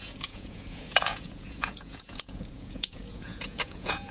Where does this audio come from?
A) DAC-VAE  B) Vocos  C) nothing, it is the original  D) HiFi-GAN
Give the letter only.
B